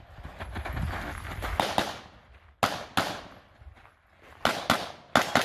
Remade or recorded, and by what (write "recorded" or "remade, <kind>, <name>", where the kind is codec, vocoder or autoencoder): recorded